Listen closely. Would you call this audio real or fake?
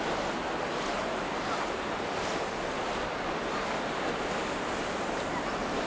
real